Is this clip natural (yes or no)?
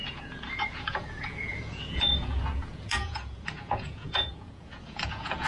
no